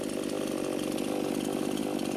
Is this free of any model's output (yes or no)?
yes